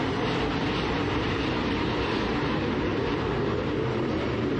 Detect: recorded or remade remade